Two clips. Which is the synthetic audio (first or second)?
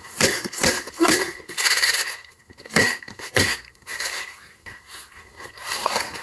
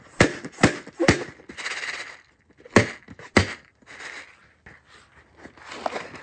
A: first